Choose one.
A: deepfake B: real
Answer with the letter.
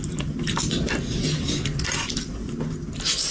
B